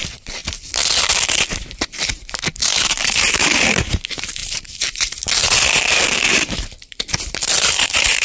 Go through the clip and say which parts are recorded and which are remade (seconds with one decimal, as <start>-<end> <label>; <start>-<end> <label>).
0.0-0.4 remade; 0.4-1.3 recorded; 1.3-8.2 remade